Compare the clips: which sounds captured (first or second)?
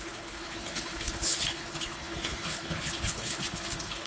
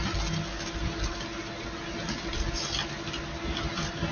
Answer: second